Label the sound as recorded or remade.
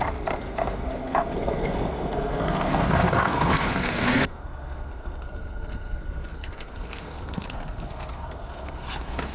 remade